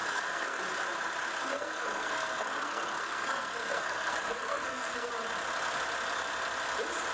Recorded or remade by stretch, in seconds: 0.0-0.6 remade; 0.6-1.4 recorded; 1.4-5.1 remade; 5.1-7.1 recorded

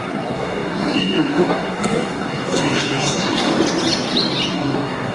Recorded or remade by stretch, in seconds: 0.0-3.5 remade; 3.5-4.5 recorded; 4.5-5.1 remade